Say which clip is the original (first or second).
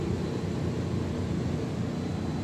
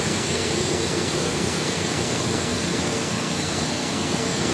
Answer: first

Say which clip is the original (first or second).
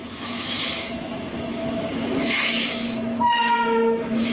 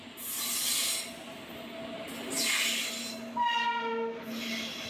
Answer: second